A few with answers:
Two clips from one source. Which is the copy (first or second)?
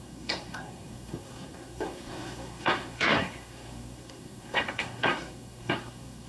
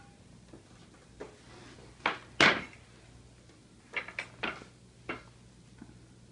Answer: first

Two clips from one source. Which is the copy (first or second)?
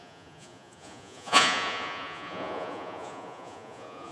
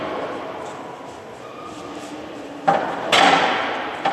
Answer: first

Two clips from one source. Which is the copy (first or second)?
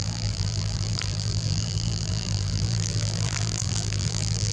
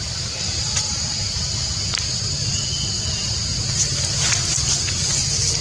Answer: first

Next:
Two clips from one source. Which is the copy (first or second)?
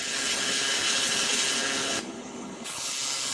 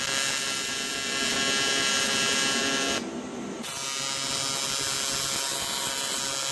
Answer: first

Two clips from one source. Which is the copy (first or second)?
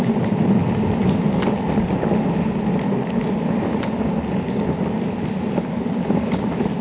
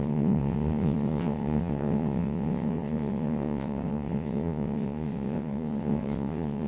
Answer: second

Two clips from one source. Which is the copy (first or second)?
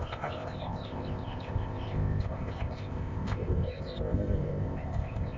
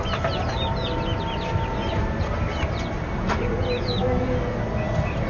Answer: first